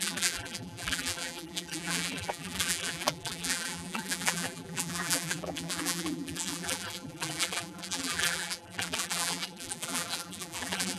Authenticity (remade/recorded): remade